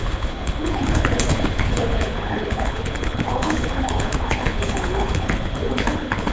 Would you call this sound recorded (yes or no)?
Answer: no